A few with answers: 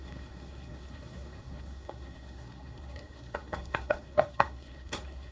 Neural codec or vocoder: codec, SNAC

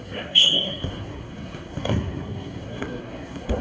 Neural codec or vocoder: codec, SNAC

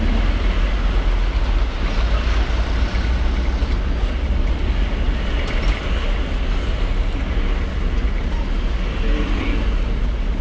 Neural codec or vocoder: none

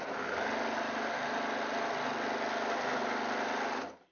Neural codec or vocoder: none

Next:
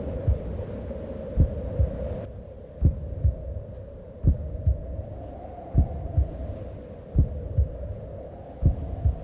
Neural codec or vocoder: none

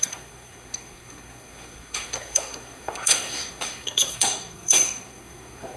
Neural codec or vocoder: codec, SNAC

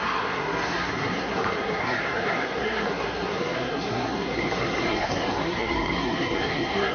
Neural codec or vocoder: codec, SNAC